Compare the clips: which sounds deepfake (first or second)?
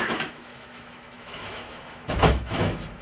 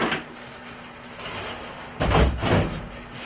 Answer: first